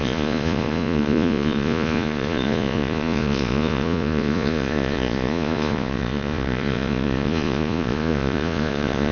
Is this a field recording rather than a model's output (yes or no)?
no